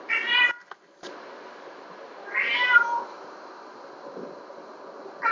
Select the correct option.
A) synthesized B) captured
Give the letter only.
B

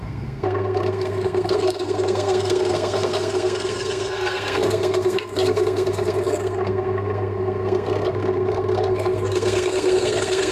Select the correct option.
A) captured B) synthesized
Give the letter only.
B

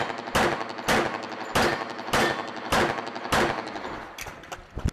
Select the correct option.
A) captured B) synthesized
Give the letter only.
A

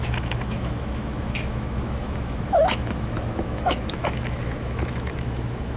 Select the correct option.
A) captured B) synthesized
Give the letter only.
B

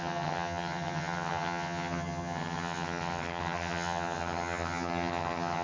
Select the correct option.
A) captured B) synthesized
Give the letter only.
B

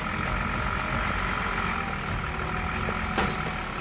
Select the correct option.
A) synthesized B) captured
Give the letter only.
B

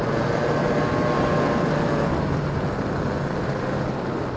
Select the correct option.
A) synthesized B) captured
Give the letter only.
B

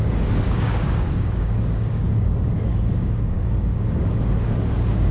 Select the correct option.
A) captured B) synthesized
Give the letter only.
B